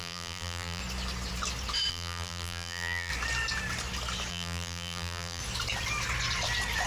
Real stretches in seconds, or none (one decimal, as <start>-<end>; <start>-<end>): 0.8-1.9; 3.1-4.3; 5.4-6.9